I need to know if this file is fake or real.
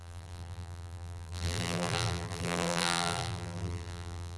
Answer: fake